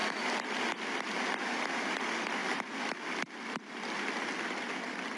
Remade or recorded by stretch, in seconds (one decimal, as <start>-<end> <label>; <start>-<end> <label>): 0.0-5.2 recorded